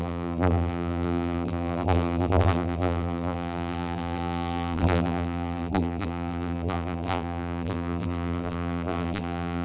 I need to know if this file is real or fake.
fake